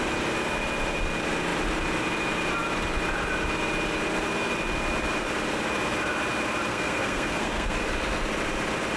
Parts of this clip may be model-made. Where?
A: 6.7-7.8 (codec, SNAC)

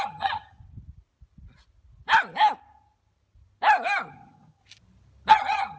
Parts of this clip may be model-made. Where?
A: 0.0-0.6 (vocoder, HiFi-GAN); 4.1-4.6; 5.3-5.8

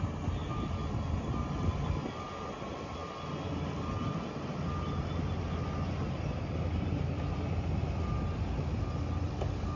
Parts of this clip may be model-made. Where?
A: none

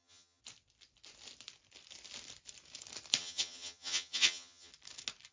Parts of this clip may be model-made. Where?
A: 0.0-0.4 (vocoder, HiFi-GAN); 3.2-4.7

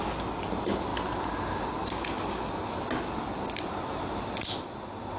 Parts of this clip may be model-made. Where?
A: none